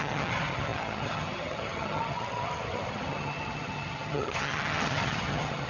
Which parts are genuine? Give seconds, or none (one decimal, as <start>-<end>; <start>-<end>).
none